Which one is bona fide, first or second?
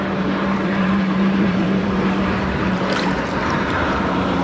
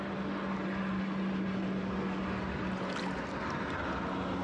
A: second